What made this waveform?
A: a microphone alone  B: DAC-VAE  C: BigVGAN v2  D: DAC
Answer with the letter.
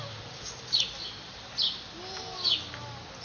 A